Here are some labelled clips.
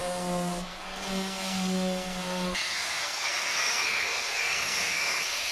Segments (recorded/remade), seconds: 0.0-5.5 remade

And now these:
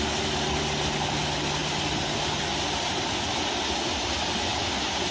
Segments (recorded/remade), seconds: 0.0-4.5 recorded; 4.5-5.1 remade